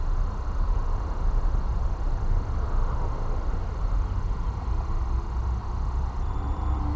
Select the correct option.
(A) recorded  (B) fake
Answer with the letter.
A